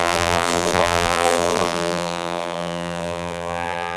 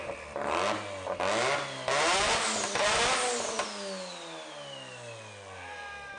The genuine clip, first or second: second